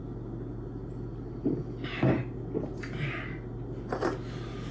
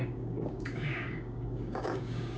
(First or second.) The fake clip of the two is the second